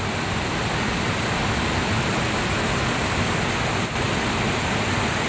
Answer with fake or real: real